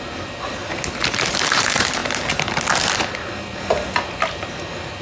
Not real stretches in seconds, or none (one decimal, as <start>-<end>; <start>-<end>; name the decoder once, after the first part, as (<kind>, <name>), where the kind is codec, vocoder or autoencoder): 0.0-0.6 (vocoder, BigVGAN v2); 1.4-2.0